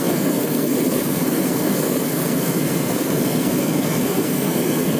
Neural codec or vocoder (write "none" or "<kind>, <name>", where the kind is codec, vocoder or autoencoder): codec, SNAC